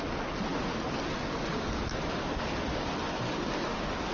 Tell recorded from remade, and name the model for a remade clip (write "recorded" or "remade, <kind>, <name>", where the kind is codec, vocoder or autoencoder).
recorded